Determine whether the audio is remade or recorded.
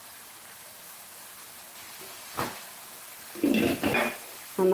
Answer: recorded